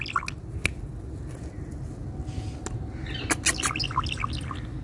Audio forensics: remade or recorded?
recorded